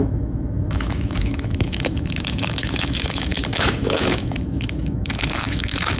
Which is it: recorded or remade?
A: remade